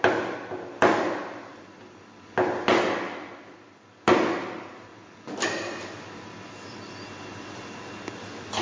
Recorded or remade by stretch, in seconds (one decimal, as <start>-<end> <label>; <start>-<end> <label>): 0.0-8.6 recorded